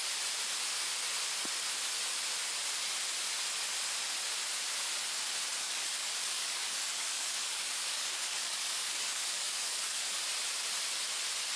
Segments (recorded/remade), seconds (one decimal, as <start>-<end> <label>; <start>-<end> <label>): 0.0-5.5 recorded; 5.5-10.2 remade; 10.2-11.6 recorded